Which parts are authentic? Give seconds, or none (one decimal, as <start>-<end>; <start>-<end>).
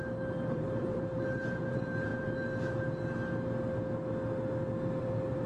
2.1-5.0